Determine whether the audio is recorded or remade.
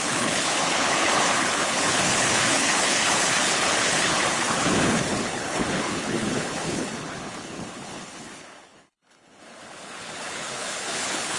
remade